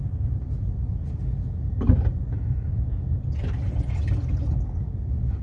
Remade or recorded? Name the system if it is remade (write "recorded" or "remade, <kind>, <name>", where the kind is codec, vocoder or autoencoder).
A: recorded